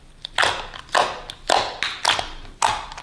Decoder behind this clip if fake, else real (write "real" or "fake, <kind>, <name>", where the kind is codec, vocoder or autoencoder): real